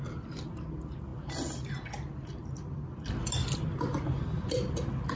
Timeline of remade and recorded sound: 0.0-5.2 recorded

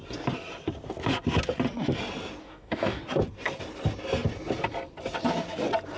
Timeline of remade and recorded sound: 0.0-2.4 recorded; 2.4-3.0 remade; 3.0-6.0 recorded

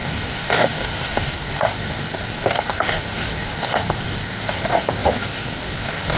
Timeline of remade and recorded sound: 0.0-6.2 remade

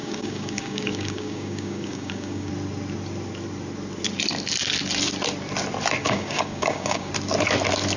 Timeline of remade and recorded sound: 0.0-2.5 remade; 2.5-6.0 recorded; 6.0-7.1 remade; 7.1-8.0 recorded

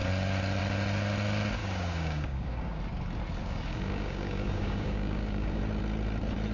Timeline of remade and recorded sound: 0.0-1.6 recorded; 1.6-2.8 remade; 2.8-3.4 recorded; 3.4-5.6 remade; 5.6-6.5 recorded

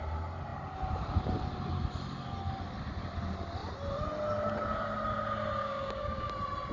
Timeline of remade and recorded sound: 0.0-5.6 recorded; 5.6-6.3 remade; 6.3-6.7 recorded

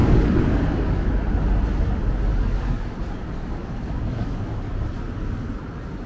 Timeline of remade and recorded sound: 0.0-1.1 remade; 1.1-2.3 recorded; 2.3-4.7 remade; 4.7-6.1 recorded

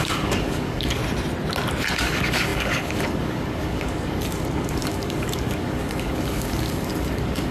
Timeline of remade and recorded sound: 0.0-1.0 remade; 1.0-1.9 recorded; 1.9-7.5 remade